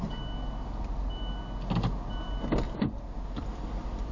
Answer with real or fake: real